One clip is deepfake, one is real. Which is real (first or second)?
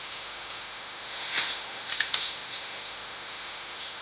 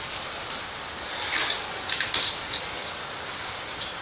second